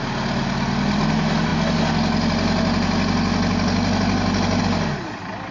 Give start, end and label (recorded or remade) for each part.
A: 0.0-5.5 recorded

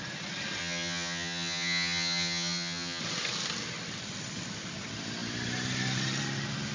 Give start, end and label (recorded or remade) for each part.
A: 0.0-0.6 recorded; 0.6-3.0 remade; 3.0-6.7 recorded

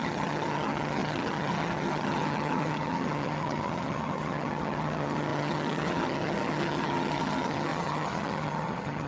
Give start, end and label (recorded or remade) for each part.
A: 0.0-9.1 remade